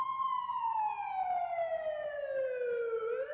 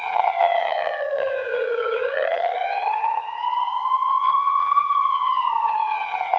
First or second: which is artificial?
second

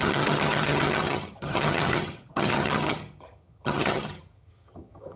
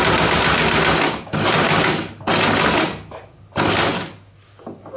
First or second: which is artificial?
first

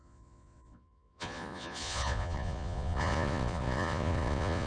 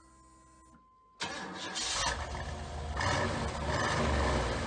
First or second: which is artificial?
first